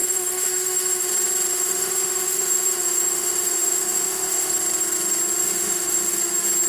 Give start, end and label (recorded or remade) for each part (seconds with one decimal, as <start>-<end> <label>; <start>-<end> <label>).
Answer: 0.0-1.1 remade; 1.1-1.5 recorded; 1.5-4.5 remade; 4.5-5.4 recorded; 5.4-6.2 remade; 6.2-6.7 recorded